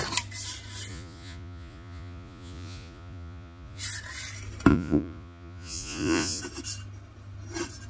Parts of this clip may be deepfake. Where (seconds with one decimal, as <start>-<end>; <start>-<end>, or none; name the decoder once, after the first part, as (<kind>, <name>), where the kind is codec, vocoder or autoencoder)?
0.9-3.8 (vocoder, Vocos); 4.7-6.4